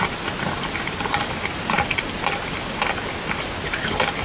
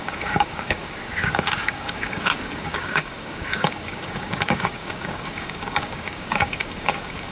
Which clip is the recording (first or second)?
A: first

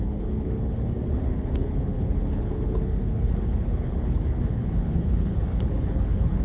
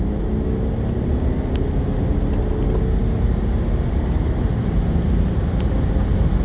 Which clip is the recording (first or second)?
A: second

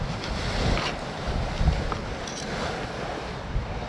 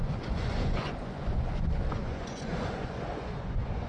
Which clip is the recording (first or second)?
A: first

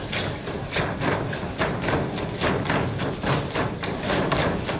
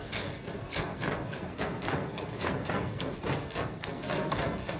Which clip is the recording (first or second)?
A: first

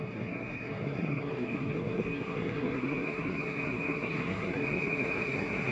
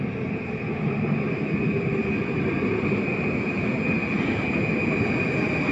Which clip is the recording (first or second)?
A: second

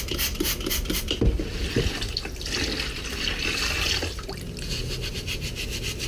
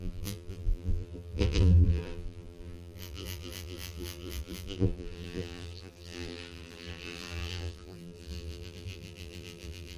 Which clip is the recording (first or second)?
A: first